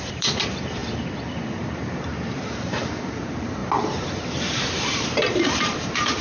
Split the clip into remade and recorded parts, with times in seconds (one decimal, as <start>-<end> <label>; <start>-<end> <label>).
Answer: 0.0-0.8 remade; 0.8-1.5 recorded; 1.5-6.2 remade